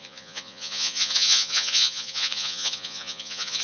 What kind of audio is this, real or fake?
fake